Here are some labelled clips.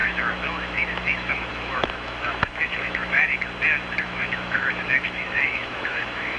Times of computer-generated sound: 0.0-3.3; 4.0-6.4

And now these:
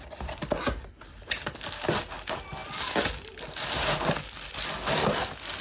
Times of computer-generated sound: 0.4-1.5

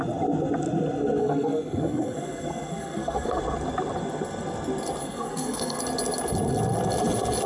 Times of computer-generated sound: 1.2-3.4; 5.0-5.8